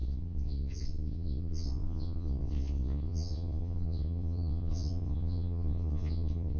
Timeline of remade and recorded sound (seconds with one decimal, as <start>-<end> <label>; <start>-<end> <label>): 0.0-6.6 remade